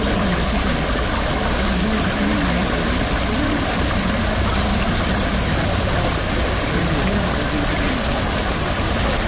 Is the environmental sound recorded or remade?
recorded